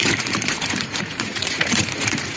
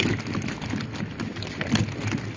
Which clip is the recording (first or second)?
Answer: second